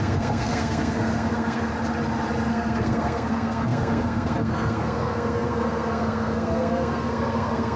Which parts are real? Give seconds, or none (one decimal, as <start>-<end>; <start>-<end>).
1.7-2.5

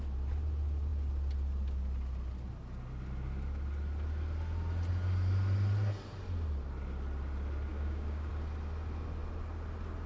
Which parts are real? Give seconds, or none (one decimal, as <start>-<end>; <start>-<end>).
0.0-7.7; 8.3-10.1

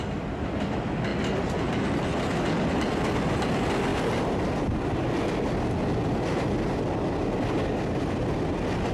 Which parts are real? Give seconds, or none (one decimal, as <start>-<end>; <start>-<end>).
0.0-8.9

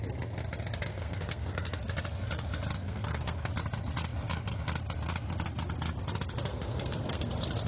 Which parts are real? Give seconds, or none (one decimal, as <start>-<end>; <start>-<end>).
0.0-0.9; 1.8-2.8; 3.5-6.5; 7.3-7.7

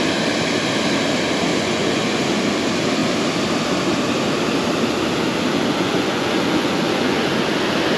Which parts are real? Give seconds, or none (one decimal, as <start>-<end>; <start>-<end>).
0.0-1.5; 2.4-5.5; 7.4-8.0

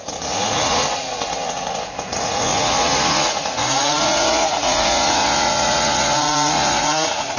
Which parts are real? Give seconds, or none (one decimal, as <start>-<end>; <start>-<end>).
none

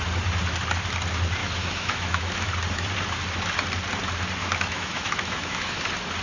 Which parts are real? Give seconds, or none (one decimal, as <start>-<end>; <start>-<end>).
0.0-1.4; 2.5-4.4; 5.8-6.2

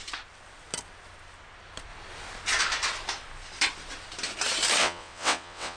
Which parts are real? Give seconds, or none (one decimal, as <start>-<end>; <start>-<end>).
0.0-4.8